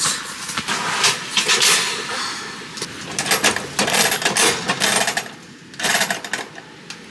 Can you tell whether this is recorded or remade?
recorded